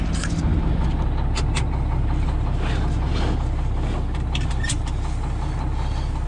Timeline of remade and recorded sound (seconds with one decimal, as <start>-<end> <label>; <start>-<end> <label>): 0.0-6.3 recorded